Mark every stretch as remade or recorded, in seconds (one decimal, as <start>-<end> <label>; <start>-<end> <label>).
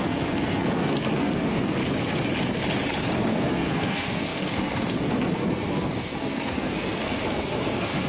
0.0-1.8 remade; 1.8-3.3 recorded; 3.3-8.1 remade